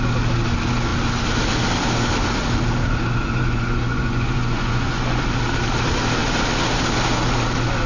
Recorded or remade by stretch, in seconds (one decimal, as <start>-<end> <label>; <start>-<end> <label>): 0.0-3.2 recorded; 3.2-5.2 remade; 5.2-7.9 recorded